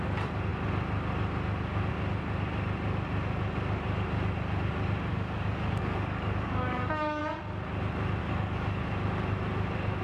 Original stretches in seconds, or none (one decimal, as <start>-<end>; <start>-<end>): 0.0-5.1; 7.2-8.2; 8.8-10.0